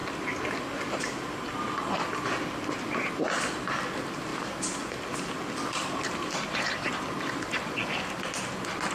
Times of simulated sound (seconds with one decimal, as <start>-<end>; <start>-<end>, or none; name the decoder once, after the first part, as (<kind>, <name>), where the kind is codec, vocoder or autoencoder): none